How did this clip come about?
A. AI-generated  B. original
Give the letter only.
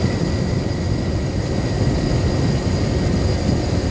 B